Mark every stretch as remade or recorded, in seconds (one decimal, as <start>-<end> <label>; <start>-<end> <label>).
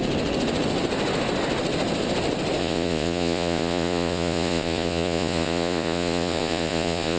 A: 0.0-2.6 recorded; 2.6-7.2 remade